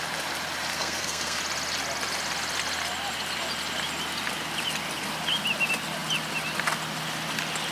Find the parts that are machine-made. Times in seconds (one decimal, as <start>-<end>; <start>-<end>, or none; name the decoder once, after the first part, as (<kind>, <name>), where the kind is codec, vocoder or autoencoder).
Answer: 0.7-1.4 (codec, SNAC)